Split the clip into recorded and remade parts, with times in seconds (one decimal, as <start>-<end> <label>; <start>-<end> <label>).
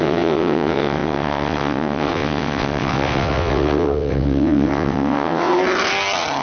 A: 0.0-5.5 remade; 5.5-6.4 recorded